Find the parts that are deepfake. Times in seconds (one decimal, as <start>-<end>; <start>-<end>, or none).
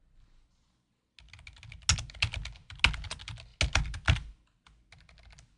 none